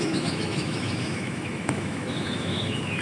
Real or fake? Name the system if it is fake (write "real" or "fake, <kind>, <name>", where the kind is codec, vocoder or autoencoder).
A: fake, autoencoder, DAC-VAE